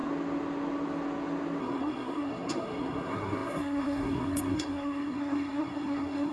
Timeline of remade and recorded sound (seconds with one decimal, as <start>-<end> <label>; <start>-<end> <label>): 0.0-1.6 recorded; 1.6-6.3 remade